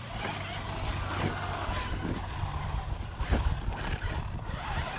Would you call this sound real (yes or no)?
yes